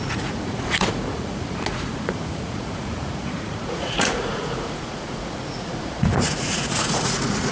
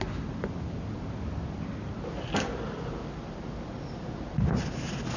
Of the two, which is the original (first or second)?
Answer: second